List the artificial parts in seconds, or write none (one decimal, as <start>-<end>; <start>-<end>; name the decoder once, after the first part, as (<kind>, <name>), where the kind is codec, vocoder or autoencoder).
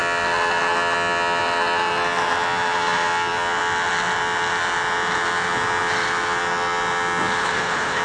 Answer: 7.4-8.0 (codec, HILCodec)